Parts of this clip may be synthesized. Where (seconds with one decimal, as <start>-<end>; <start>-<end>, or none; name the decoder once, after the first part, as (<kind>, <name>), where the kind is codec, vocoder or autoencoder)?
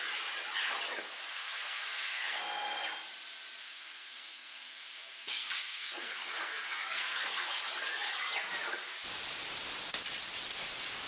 1.3-2.4 (codec, SNAC); 3.6-7.6